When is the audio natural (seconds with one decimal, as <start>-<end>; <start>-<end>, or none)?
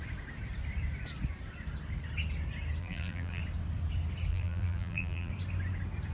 0.0-2.8; 3.4-4.3; 5.3-6.1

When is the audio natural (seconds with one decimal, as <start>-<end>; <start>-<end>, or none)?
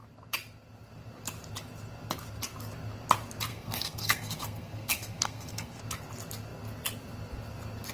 0.0-3.5; 5.8-7.9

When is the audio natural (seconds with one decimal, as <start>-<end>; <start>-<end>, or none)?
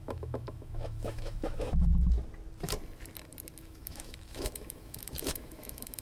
1.9-3.6